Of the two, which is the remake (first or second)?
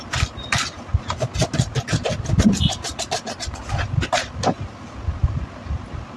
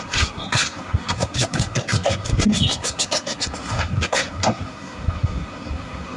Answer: second